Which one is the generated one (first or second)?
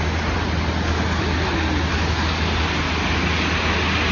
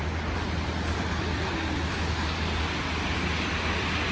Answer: second